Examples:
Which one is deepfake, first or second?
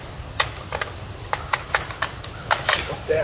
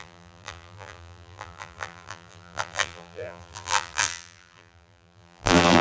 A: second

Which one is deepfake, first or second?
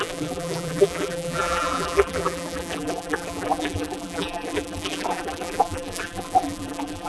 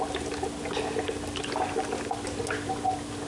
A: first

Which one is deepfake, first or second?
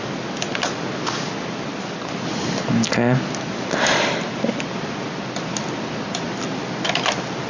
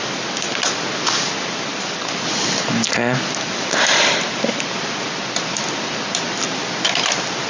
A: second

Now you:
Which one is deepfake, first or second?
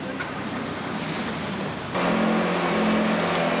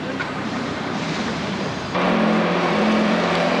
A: second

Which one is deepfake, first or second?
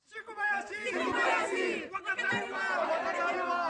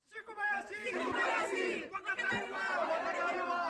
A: second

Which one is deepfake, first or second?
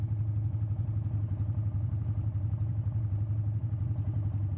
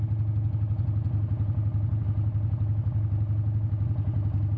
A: first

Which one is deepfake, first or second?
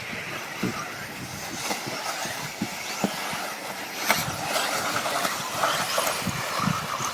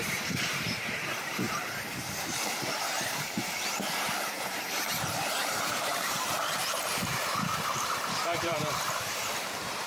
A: second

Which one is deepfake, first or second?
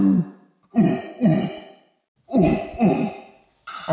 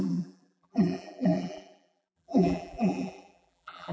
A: second